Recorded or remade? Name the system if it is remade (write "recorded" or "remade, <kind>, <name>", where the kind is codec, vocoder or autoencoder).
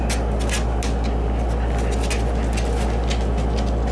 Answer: recorded